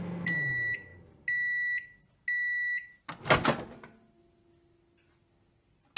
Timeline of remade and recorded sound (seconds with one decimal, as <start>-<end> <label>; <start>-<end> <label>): 0.0-6.0 recorded